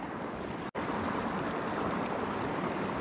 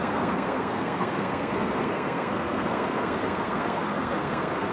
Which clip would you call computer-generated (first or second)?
second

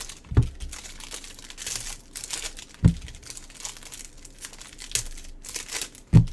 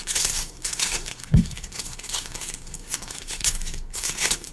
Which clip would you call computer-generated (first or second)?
second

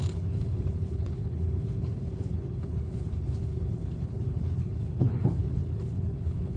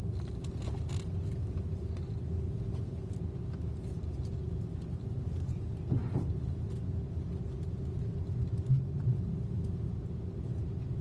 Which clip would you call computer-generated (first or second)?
first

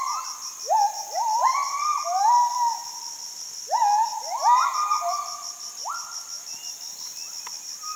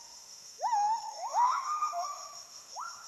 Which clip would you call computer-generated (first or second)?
second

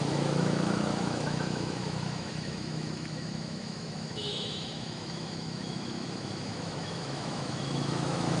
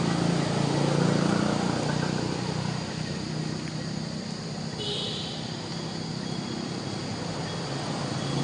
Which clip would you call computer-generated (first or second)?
first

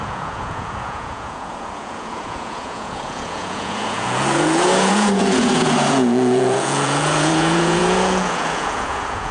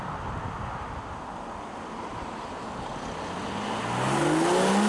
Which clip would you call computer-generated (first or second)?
first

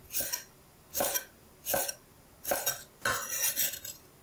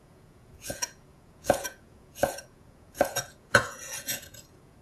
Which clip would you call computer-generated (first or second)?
second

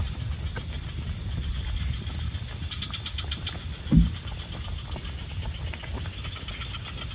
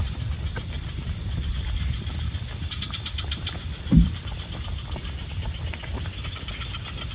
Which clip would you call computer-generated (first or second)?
second